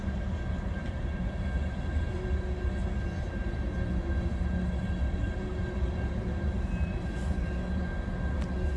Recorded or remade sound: recorded